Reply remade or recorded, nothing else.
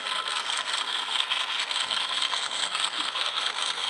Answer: remade